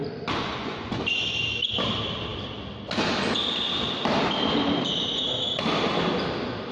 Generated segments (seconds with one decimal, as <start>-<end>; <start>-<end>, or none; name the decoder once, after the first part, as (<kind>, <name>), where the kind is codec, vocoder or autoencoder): 0.4-1.0 (vocoder, Vocos)